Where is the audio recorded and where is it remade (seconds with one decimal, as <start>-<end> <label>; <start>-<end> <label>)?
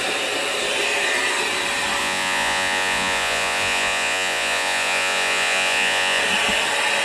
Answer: 0.0-2.0 recorded; 2.0-6.2 remade; 6.2-7.0 recorded